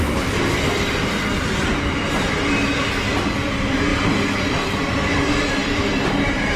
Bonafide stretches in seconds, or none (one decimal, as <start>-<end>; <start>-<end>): 0.0-3.9; 5.9-6.6

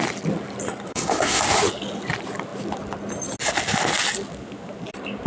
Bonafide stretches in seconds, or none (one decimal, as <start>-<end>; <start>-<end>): 0.0-0.9; 1.4-5.3